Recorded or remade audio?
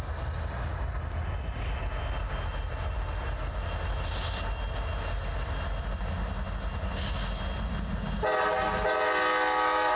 recorded